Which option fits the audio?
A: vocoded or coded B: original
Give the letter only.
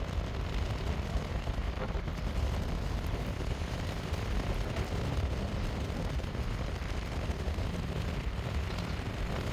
B